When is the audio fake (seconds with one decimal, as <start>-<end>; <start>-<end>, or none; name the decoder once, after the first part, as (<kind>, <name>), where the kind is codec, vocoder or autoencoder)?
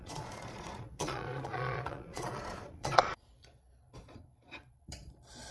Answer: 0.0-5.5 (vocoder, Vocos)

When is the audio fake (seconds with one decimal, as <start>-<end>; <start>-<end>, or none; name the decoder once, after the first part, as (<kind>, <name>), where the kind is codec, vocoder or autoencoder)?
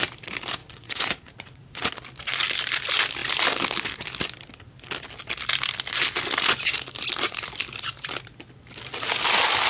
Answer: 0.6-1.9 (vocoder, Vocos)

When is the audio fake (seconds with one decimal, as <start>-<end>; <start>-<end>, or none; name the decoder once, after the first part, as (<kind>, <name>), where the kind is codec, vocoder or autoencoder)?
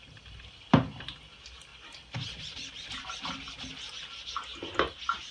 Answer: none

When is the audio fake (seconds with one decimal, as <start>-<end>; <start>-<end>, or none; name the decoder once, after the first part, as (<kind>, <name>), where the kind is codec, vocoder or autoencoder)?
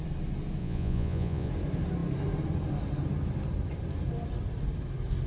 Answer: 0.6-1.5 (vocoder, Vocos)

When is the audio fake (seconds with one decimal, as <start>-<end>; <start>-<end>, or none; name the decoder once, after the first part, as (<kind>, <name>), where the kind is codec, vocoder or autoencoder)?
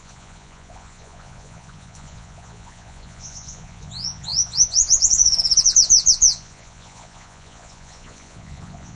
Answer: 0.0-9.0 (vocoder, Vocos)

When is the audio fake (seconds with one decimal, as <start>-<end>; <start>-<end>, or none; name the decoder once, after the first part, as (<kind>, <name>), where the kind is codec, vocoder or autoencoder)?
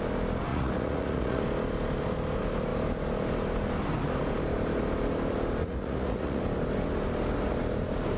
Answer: 0.5-1.4 (vocoder, Vocos); 5.6-6.4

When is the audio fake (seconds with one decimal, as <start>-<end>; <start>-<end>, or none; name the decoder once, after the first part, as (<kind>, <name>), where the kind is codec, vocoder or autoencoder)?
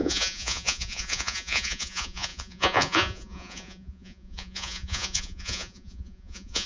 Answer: 0.0-6.7 (vocoder, Vocos)